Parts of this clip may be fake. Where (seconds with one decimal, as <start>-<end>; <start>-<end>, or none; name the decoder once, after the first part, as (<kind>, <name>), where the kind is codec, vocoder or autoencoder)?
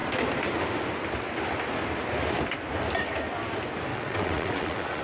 3.9-5.0 (vocoder, WaveNeXt)